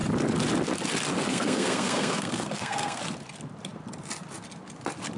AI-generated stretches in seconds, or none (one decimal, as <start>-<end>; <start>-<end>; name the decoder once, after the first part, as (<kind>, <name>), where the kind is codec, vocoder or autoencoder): 1.3-3.0 (codec, SNAC)